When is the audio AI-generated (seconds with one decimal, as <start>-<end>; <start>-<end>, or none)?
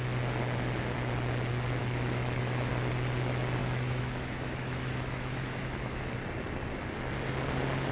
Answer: 1.8-2.7; 3.6-6.1